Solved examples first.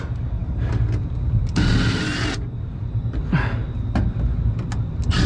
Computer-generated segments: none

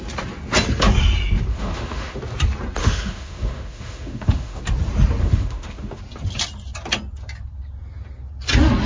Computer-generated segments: 1.5-2.2 (autoencoder, DAC-VAE); 2.8-4.6; 5.2-6.0

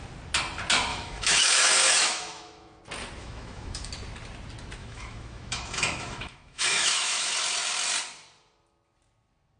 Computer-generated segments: 0.9-2.8 (autoencoder, DAC-VAE); 3.2-3.9; 4.8-7.3